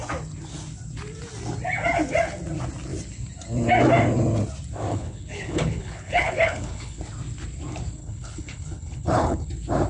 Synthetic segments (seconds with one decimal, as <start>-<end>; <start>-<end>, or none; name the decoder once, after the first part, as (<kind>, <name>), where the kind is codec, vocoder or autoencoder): 4.9-7.0 (codec, HILCodec); 8.0-9.5